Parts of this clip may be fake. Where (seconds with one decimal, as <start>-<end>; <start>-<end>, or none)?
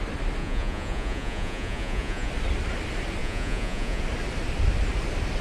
0.4-2.3; 3.2-4.0